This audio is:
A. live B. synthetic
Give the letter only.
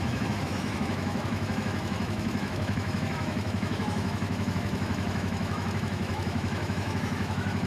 B